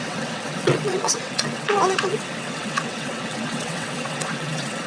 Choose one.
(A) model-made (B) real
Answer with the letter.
A